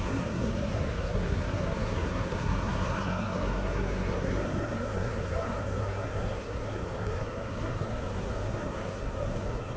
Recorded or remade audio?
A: remade